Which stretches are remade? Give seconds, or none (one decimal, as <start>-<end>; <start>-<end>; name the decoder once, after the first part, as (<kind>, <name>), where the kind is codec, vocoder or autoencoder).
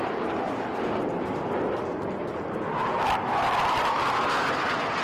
none